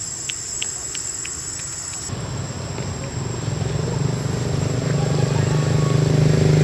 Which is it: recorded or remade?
recorded